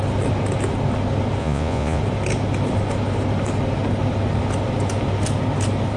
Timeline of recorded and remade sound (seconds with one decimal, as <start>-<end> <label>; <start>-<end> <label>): 0.0-1.4 recorded; 1.4-2.0 remade; 2.0-6.0 recorded